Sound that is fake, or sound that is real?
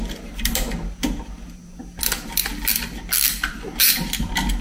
real